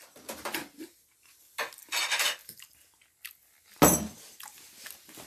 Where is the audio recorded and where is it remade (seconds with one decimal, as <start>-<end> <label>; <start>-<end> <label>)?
0.0-5.3 recorded